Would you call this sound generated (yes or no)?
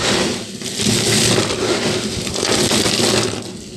no